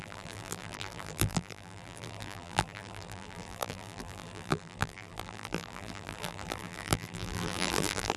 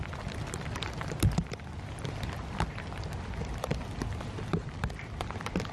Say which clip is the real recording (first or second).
second